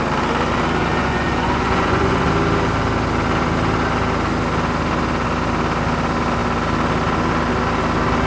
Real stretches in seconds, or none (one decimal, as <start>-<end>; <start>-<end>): 0.0-1.0; 2.3-8.3